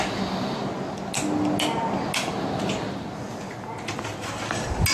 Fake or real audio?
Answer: real